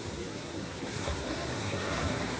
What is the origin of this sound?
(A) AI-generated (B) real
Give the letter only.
A